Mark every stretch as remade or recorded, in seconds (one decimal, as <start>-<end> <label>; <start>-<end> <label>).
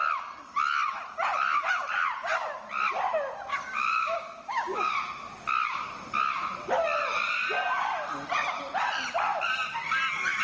0.0-3.6 recorded; 3.6-4.9 remade; 4.9-10.4 recorded